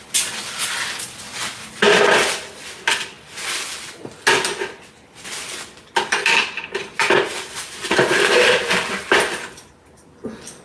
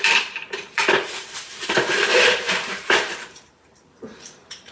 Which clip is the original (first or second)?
first